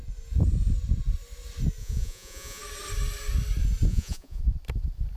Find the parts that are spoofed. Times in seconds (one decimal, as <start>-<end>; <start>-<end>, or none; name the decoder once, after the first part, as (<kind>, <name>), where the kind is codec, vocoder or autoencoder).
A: 1.8-2.6 (vocoder, Vocos); 3.9-4.4